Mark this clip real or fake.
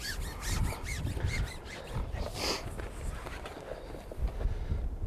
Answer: real